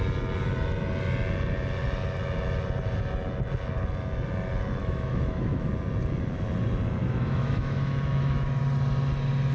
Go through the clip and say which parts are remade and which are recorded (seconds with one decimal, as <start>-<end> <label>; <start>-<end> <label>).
0.0-4.8 recorded; 4.8-5.7 remade; 5.7-7.0 recorded; 7.0-8.6 remade; 8.6-9.5 recorded